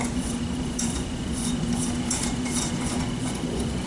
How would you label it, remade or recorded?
remade